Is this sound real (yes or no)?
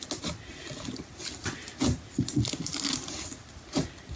yes